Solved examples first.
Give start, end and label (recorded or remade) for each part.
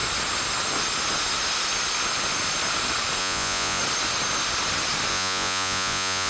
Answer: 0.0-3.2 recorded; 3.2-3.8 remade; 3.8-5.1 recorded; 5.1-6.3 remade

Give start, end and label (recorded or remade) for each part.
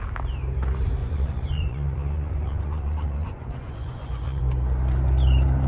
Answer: 0.0-1.0 recorded; 1.0-4.4 remade; 4.4-5.7 recorded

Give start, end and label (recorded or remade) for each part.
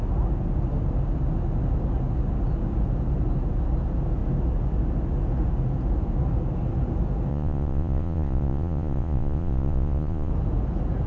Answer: 0.0-7.3 recorded; 7.3-10.3 remade; 10.3-11.1 recorded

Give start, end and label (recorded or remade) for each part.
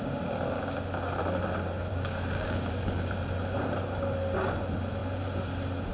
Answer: 0.0-1.9 recorded; 1.9-2.7 remade; 2.7-5.9 recorded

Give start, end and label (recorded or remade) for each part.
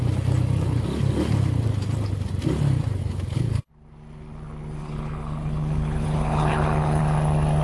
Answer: 0.0-3.0 recorded; 3.0-3.7 remade; 3.7-4.8 recorded; 4.8-7.0 remade; 7.0-7.6 recorded